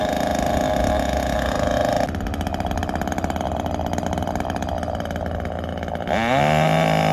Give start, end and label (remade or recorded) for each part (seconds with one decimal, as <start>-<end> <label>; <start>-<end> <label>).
0.0-2.8 recorded; 2.8-4.7 remade; 4.7-7.1 recorded